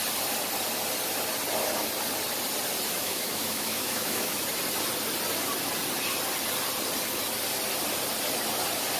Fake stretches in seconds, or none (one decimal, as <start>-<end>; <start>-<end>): 3.0-4.4